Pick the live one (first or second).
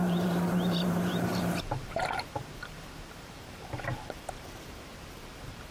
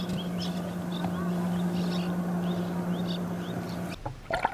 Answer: second